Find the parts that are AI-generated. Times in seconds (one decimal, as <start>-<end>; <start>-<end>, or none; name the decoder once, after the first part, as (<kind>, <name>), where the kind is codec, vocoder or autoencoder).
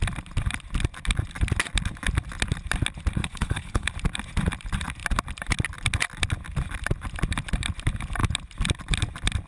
3.2-3.9 (codec, HILCodec)